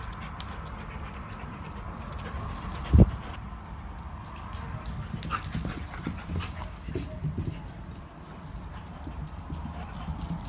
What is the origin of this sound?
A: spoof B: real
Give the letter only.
B